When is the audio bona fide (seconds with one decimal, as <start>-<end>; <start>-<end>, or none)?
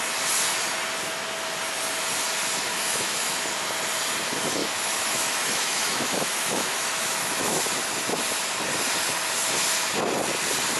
0.0-2.7; 3.4-4.6; 7.6-10.8